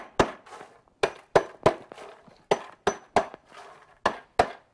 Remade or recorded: recorded